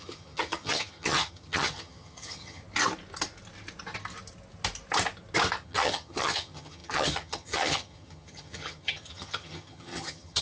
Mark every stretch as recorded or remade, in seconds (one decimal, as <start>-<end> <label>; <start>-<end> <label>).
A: 0.0-2.6 remade; 2.6-5.6 recorded; 5.6-10.4 remade